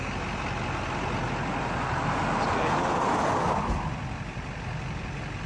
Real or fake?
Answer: real